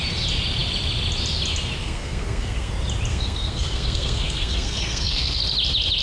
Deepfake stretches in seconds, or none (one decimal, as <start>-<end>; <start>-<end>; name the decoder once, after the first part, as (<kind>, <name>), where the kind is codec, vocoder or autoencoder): 1.8-2.7 (codec, SNAC); 3.1-5.4